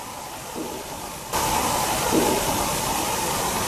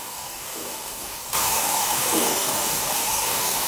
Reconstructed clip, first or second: second